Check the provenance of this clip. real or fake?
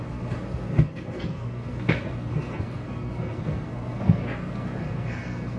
fake